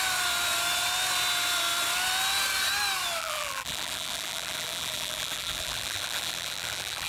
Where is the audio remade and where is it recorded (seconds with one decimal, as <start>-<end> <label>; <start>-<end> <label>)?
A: 0.0-3.2 recorded; 3.2-7.1 remade